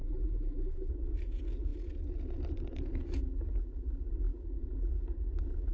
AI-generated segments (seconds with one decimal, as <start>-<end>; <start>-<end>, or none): 0.0-0.9